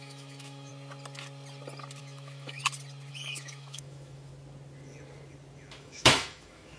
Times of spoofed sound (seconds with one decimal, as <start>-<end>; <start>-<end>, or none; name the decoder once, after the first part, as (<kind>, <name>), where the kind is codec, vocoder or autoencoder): 0.0-0.7 (autoencoder, DAC-VAE); 2.0-2.6; 3.1-4.3; 5.8-6.8